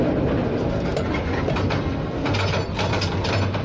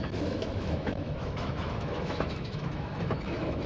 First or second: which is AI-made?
second